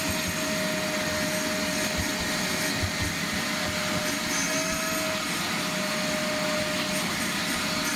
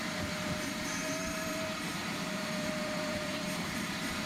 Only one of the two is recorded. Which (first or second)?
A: first